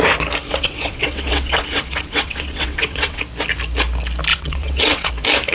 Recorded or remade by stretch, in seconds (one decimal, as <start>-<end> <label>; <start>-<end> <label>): 0.0-0.5 recorded; 0.5-3.2 remade; 3.2-4.3 recorded; 4.3-5.1 remade; 5.1-5.5 recorded